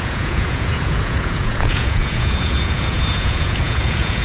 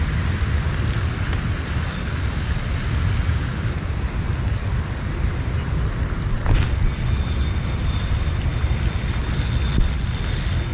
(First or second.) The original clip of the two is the second